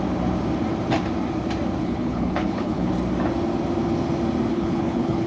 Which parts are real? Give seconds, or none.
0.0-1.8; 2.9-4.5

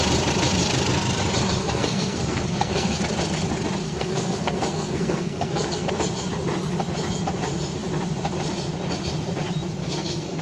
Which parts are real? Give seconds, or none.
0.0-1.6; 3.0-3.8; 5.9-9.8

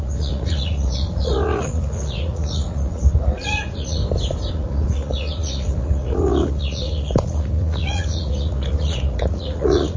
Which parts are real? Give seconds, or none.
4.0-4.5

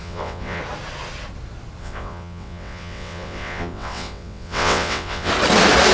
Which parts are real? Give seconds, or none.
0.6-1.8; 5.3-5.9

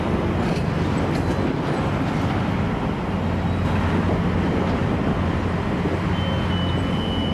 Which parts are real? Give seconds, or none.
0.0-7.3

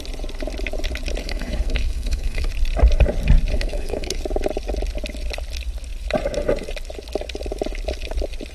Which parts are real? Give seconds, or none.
0.0-1.2; 2.5-3.5; 4.2-8.5